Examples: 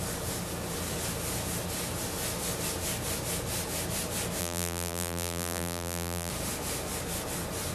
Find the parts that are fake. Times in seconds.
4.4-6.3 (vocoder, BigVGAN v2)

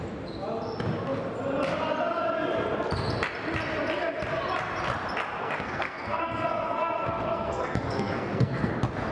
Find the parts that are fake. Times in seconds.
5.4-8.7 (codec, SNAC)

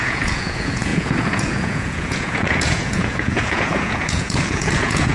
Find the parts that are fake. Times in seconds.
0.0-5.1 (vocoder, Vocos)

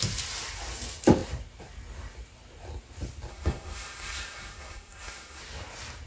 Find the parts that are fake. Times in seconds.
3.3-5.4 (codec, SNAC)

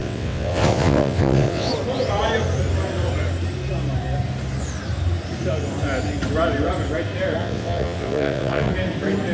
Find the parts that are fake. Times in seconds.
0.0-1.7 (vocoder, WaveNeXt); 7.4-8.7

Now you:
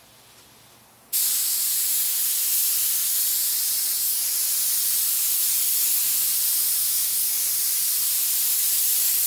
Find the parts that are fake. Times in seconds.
none

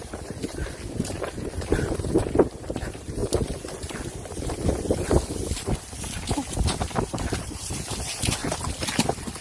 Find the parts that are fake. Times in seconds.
0.0-2.2 (vocoder, BigVGAN v2); 2.8-3.2; 7.4-8.4